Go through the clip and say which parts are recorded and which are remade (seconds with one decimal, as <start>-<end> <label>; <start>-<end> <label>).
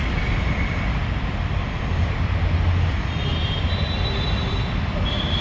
0.0-1.0 recorded; 1.0-1.8 remade; 1.8-3.3 recorded; 3.3-4.5 remade; 4.5-5.4 recorded